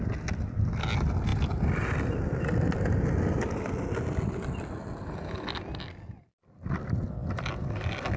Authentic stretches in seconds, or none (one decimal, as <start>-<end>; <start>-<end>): 0.0-8.2